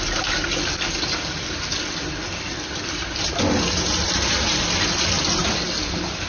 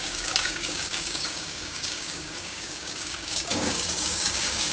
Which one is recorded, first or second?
first